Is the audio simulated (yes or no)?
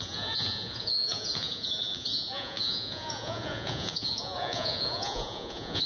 yes